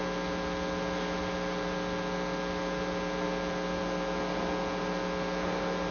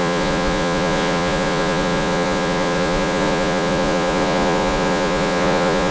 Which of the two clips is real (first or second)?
first